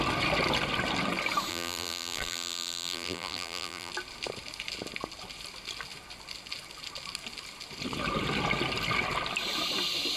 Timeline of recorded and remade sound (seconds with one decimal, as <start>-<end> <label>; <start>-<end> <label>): 0.0-1.5 recorded; 1.5-3.9 remade; 3.9-10.2 recorded